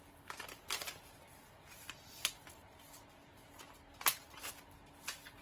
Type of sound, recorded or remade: recorded